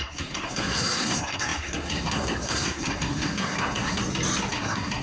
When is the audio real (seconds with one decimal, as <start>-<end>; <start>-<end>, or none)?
4.0-4.5